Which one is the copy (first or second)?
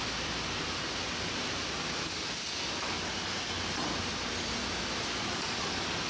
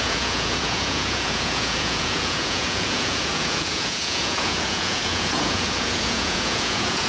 second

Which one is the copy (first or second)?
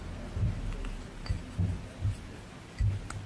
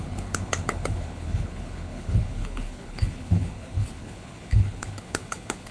second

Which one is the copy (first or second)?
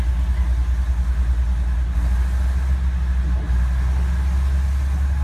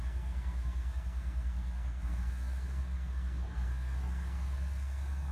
second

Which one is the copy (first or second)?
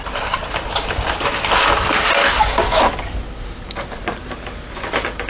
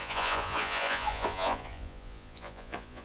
second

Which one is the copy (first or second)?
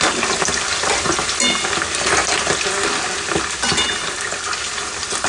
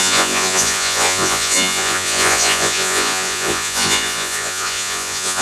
second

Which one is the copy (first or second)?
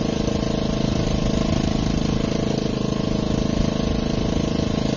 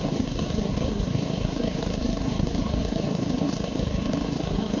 second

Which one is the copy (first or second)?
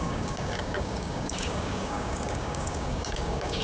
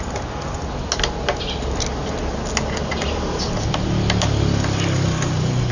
first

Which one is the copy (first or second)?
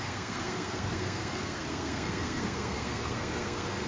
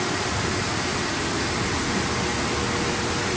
first